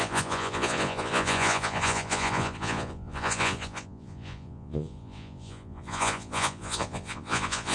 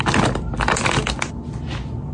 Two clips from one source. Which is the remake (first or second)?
first